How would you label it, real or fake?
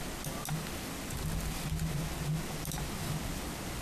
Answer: real